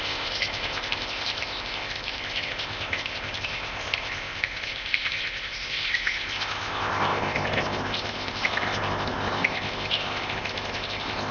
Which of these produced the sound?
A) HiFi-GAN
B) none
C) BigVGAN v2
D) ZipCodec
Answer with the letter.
D